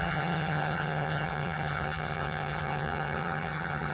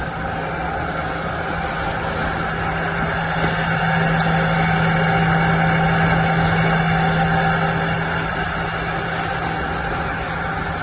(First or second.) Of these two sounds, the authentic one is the second